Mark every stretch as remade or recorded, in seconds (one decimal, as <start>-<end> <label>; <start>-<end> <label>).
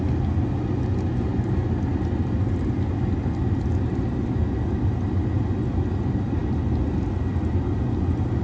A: 0.0-8.4 recorded